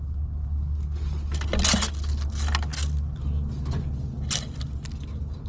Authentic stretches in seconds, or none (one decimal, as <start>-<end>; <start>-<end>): 0.0-5.5